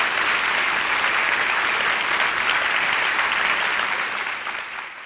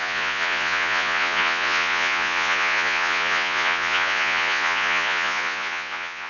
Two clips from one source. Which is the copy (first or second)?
second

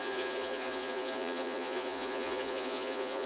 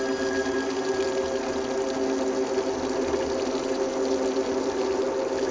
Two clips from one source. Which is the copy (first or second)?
first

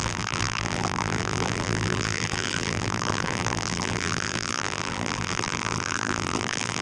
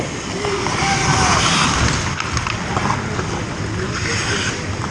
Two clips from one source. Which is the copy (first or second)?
first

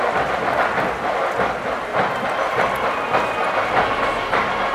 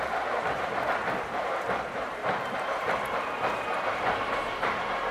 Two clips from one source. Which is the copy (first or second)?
second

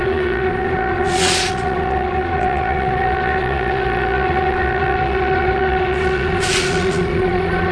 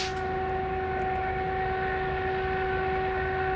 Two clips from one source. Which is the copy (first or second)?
first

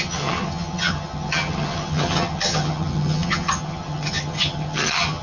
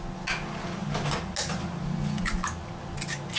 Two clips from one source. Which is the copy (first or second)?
first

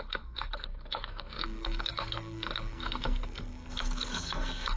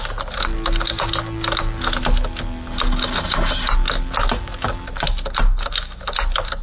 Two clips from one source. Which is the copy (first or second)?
first